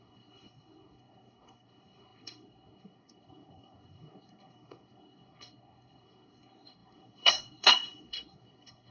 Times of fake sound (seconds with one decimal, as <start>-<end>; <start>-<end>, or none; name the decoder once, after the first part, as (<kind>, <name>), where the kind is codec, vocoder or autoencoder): 0.0-8.9 (codec, SNAC)